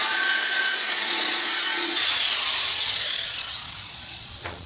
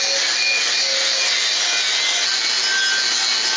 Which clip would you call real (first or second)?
second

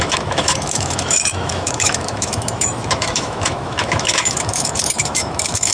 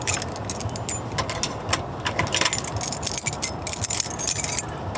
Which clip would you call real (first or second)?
second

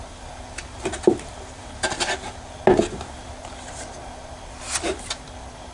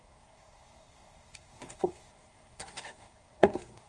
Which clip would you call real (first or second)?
first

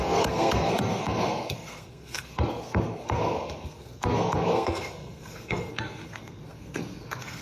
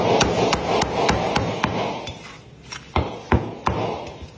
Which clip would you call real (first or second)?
second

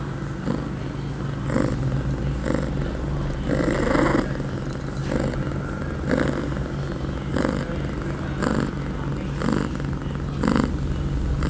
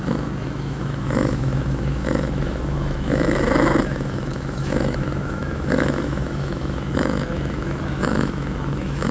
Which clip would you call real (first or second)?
first